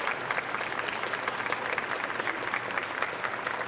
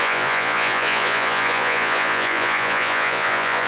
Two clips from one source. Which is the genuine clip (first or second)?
first